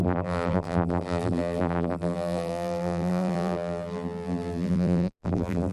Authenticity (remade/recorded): remade